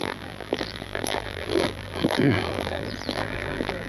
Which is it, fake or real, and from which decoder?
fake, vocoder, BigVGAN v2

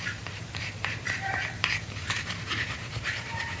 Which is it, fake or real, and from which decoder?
fake, vocoder, BigVGAN v2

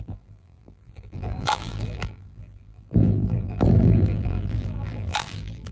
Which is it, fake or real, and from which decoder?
fake, vocoder, BigVGAN v2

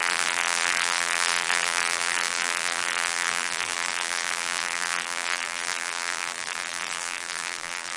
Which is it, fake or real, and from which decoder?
fake, vocoder, BigVGAN v2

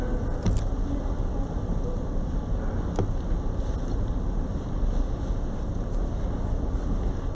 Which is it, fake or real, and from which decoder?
real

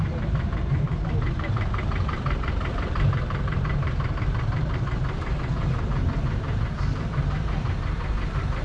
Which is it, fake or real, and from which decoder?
fake, vocoder, BigVGAN v2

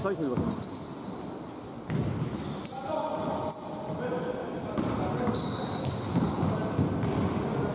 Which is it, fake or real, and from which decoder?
real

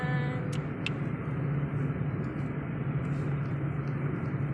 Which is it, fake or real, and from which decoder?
real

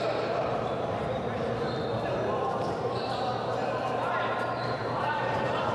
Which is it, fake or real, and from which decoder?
fake, vocoder, BigVGAN v2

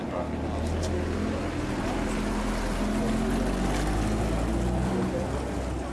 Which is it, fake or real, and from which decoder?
real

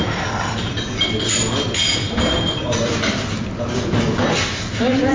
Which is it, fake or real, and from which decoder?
fake, vocoder, BigVGAN v2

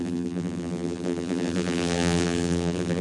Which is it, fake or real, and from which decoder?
fake, vocoder, BigVGAN v2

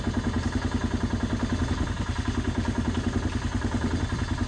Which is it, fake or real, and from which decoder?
real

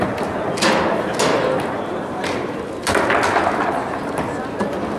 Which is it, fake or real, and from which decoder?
real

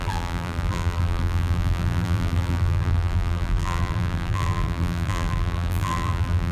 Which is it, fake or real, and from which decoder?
fake, vocoder, BigVGAN v2